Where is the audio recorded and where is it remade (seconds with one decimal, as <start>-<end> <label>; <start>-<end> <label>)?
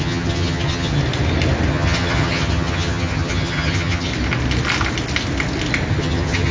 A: 0.0-1.0 remade; 1.0-1.7 recorded; 1.7-4.1 remade; 4.1-5.9 recorded; 5.9-6.5 remade